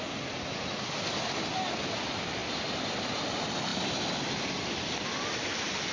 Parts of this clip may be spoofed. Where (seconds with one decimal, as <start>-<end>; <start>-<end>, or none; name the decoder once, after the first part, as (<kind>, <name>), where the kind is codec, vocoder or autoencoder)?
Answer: none